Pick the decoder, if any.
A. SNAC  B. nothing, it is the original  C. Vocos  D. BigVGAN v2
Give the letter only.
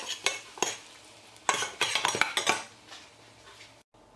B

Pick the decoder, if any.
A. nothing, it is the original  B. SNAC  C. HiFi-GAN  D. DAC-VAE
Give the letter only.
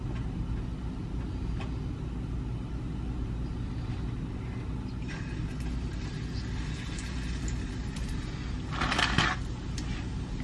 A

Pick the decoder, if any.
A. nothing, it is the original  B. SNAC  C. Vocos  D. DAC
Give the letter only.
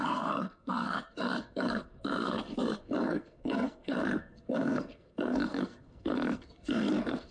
B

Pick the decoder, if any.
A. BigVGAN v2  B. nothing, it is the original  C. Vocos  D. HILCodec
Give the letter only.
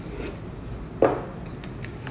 B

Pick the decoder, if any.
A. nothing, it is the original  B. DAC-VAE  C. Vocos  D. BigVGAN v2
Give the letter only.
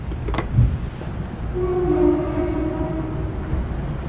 A